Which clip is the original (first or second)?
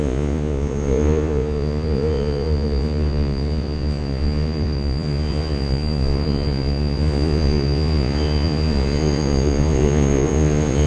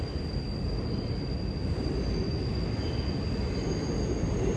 second